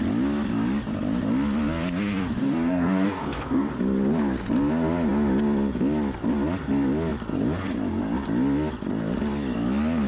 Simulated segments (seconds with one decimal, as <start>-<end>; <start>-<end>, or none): 2.4-3.7